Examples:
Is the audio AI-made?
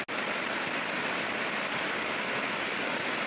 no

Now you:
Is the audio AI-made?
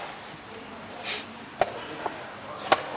no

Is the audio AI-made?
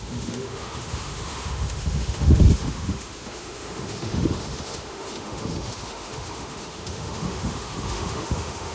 yes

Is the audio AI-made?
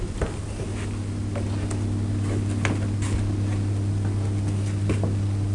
no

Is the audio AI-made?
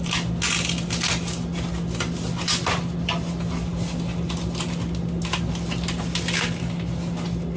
no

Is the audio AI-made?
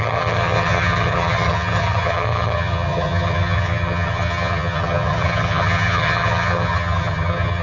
yes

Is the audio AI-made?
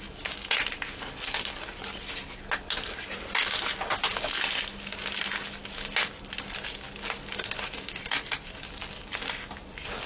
no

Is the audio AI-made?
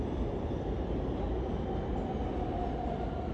no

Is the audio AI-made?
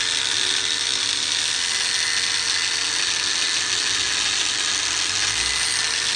no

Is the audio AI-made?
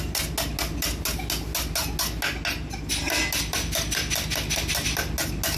no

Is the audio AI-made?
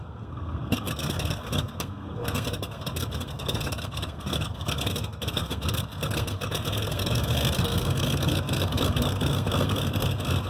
yes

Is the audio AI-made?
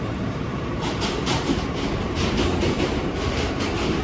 yes